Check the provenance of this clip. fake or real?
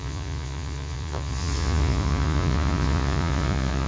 fake